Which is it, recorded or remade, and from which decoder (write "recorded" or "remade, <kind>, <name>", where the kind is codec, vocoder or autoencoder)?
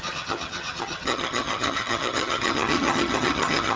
remade, vocoder, HiFi-GAN